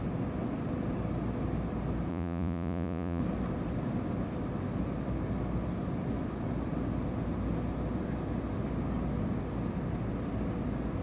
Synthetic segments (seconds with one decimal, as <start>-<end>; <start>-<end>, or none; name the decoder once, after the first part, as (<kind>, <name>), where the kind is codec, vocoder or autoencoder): 2.1-3.2 (vocoder, Vocos)

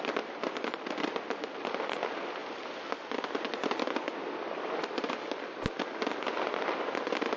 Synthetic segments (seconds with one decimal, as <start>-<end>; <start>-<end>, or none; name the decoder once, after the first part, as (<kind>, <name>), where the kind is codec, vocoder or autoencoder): none

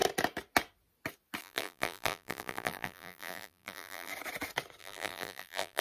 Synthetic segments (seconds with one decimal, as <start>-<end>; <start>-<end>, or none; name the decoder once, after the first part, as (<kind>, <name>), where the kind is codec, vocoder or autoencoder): 1.4-4.1 (vocoder, BigVGAN v2); 4.8-5.8

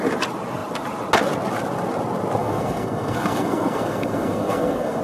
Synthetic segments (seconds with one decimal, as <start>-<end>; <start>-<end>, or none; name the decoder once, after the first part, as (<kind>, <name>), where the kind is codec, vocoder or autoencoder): 2.4-5.0 (codec, SNAC)

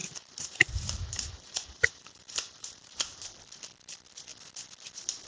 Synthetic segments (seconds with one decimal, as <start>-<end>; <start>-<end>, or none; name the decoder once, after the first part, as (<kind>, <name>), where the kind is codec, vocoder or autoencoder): 0.0-3.2 (vocoder, BigVGAN v2)

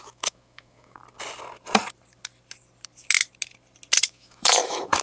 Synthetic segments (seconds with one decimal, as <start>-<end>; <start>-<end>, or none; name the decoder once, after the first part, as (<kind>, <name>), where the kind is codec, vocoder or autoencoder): 0.0-1.0 (autoencoder, DAC-VAE); 4.0-5.0